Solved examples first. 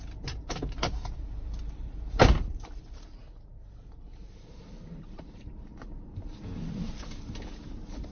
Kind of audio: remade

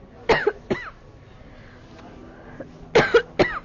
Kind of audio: recorded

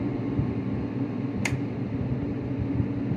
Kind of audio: recorded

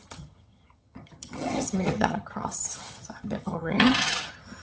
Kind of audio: remade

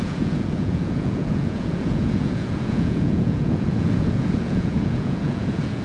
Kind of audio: remade